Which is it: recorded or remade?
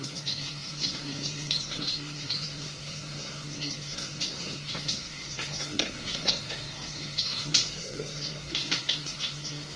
remade